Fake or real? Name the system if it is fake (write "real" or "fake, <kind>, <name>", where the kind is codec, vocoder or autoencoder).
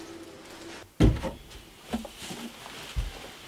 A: real